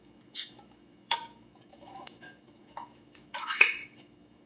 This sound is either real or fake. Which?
fake